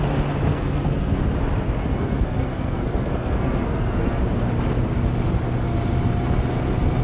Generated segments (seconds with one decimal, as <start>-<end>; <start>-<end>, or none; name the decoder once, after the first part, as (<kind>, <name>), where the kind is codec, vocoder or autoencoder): 0.5-1.2 (codec, SNAC); 1.8-4.2